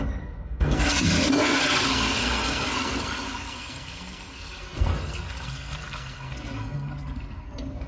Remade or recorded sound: remade